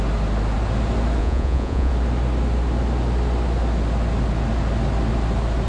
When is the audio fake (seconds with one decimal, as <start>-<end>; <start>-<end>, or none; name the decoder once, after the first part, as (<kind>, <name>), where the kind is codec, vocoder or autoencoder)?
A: 1.2-1.9 (vocoder, Vocos)